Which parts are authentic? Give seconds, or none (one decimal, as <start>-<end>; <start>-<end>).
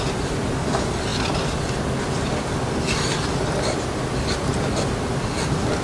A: 0.0-5.8